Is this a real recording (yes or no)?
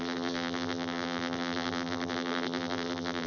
no